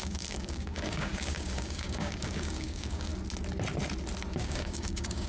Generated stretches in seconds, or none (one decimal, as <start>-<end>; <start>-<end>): 0.0-3.1; 4.4-5.3